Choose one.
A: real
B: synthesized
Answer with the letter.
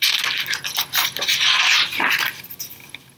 A